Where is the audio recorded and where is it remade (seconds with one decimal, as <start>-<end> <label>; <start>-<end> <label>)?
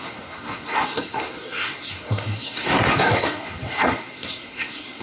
0.0-5.0 remade